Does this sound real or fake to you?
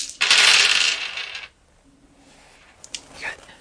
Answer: real